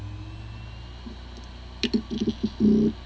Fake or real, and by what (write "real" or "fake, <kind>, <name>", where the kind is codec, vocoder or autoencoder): real